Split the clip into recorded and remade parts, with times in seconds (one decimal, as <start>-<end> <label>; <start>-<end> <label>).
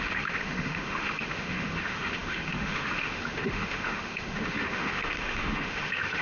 0.0-6.2 remade